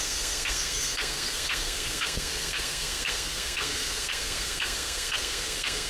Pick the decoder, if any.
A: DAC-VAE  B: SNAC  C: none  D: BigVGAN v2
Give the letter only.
B